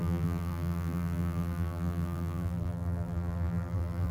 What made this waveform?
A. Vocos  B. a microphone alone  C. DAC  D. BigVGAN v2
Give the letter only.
D